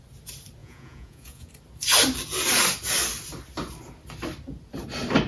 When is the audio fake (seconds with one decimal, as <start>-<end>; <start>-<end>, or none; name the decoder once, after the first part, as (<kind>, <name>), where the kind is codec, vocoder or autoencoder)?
0.6-1.5 (vocoder, Vocos)